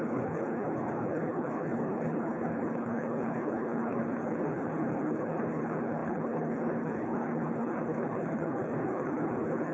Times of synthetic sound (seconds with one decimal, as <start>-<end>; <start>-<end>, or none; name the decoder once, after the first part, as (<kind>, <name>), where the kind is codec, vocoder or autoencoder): 0.0-9.7 (codec, HILCodec)